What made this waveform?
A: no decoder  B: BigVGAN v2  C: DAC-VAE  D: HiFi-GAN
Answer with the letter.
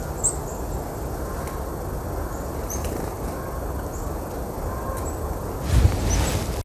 A